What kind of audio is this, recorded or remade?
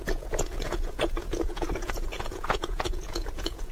remade